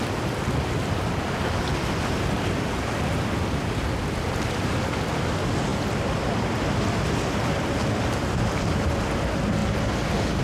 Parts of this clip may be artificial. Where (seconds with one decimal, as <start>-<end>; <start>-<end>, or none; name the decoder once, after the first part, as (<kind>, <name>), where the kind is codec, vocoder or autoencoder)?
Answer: none